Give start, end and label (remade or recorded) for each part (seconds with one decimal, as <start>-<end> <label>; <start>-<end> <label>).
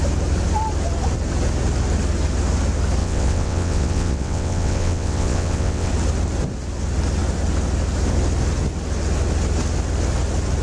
0.0-3.0 recorded; 3.0-5.9 remade; 5.9-10.6 recorded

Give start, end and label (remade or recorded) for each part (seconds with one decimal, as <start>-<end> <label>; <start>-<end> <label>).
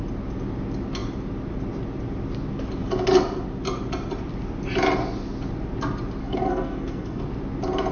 0.0-6.2 recorded; 6.2-7.2 remade; 7.2-7.9 recorded